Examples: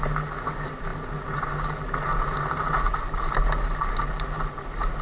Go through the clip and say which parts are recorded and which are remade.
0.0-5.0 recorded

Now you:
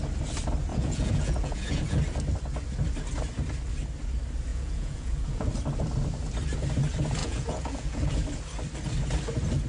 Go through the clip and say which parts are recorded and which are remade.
0.0-0.7 recorded; 0.7-2.0 remade; 2.0-4.5 recorded; 4.5-5.5 remade; 5.5-7.2 recorded; 7.2-8.0 remade; 8.0-9.7 recorded

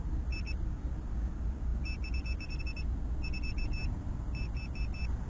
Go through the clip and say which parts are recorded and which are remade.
0.0-5.3 recorded